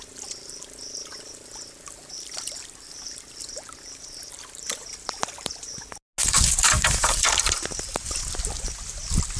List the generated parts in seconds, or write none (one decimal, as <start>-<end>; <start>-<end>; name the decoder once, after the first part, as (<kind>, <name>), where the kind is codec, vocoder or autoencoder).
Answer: 6.2-7.4 (vocoder, BigVGAN v2)